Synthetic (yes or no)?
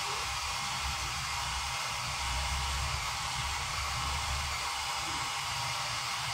yes